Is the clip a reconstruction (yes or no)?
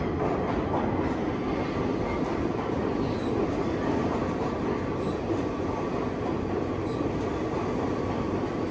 no